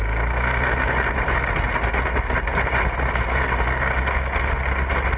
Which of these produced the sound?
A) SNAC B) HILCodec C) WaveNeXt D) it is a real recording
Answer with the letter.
D